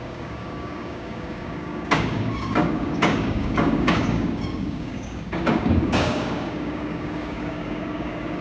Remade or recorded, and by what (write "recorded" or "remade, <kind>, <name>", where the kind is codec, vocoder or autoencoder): remade, codec, DAC